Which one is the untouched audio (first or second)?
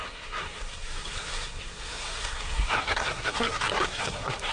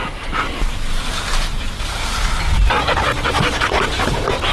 second